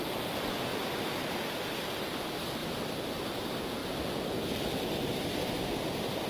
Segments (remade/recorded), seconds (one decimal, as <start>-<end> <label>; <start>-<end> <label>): 0.0-6.3 recorded